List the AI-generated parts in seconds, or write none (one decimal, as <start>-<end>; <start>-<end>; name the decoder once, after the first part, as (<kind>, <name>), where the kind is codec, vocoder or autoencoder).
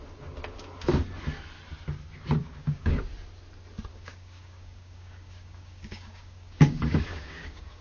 2.4-3.0 (codec, DAC); 3.9-7.8